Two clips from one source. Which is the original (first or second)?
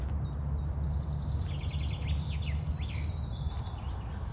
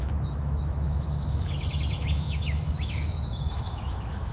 first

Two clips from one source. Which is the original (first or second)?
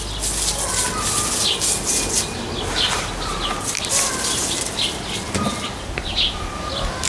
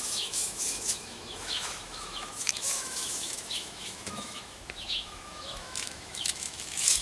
first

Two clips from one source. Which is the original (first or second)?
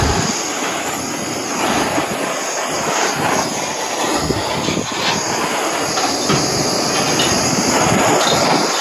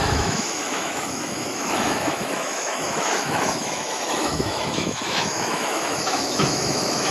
first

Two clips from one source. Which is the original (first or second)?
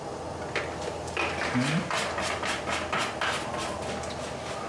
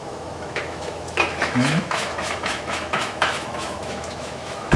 first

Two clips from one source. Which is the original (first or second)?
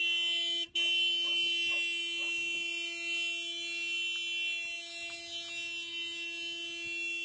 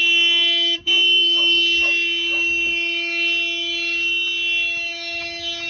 first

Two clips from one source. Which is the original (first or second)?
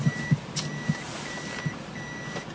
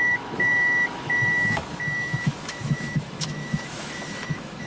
first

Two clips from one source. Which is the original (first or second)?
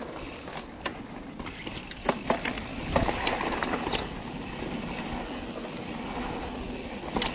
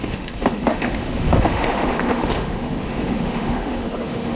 first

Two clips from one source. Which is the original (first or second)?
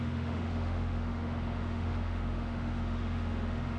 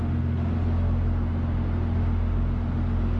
second